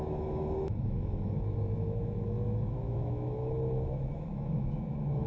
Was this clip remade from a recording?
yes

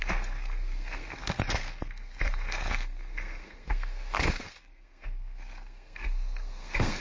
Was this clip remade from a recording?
yes